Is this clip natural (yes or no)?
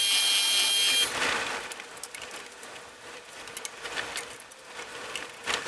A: yes